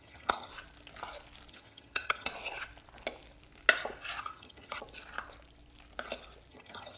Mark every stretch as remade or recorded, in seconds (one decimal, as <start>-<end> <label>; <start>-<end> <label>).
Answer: 0.0-0.5 remade; 0.5-1.5 recorded; 1.5-2.3 remade; 2.3-4.2 recorded; 4.2-4.8 remade; 4.8-6.5 recorded; 6.5-7.0 remade